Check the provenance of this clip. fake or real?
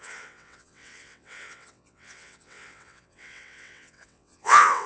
fake